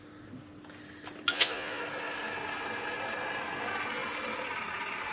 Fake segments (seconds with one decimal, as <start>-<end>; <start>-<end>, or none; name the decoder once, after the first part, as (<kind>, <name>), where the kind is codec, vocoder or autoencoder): 1.3-1.8 (vocoder, Vocos)